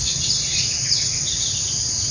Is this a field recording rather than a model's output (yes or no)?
yes